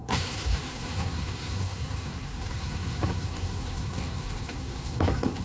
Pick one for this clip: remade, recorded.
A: remade